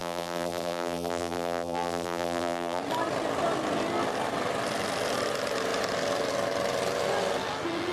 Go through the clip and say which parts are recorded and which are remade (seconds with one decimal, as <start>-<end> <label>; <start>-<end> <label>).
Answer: 0.0-2.8 remade; 2.8-7.9 recorded